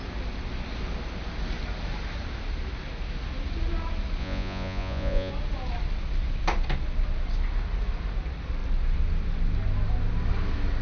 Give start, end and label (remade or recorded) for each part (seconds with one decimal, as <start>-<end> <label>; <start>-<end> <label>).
0.0-4.2 recorded; 4.2-5.3 remade; 5.3-10.8 recorded